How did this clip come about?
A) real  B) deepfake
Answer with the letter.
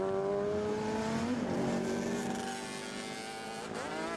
A